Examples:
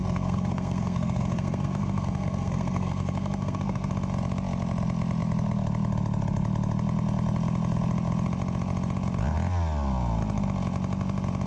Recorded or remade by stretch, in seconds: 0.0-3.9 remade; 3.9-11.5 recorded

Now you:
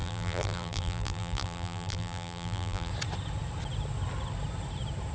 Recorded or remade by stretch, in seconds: 0.0-2.9 remade; 2.9-5.1 recorded

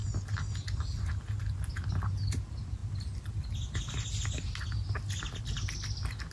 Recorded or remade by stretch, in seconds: 0.0-6.3 recorded

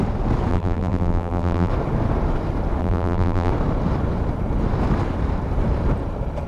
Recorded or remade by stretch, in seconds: 0.0-0.5 recorded; 0.5-1.7 remade; 1.7-2.8 recorded; 2.8-3.5 remade; 3.5-6.5 recorded

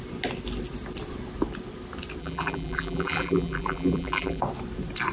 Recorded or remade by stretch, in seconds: 0.0-2.2 recorded; 2.2-4.4 remade; 4.4-5.1 recorded

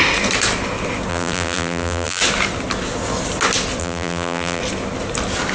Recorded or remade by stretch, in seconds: 0.0-1.1 recorded; 1.1-2.2 remade; 2.2-3.8 recorded; 3.8-4.6 remade; 4.6-5.5 recorded

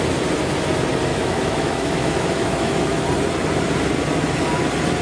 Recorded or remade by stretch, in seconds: 0.0-1.1 recorded; 1.1-3.0 remade; 3.0-5.0 recorded

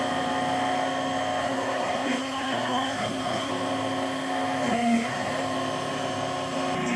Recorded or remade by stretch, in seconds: 0.0-1.4 recorded; 1.4-3.5 remade; 3.5-4.7 recorded; 4.7-5.3 remade; 5.3-7.0 recorded